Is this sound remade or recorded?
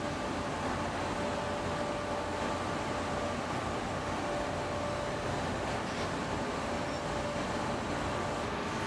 recorded